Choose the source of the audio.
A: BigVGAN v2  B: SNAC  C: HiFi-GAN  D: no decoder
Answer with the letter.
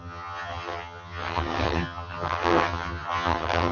C